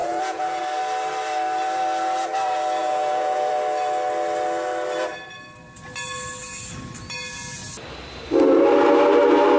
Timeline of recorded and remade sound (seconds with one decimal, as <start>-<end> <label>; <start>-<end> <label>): 0.0-0.6 remade; 0.6-2.8 recorded; 2.8-3.5 remade; 3.5-9.6 recorded